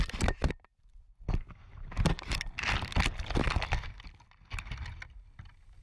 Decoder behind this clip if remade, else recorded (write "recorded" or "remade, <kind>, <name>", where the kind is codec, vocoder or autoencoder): recorded